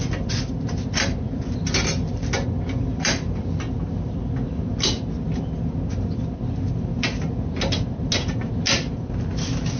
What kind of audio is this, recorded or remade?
recorded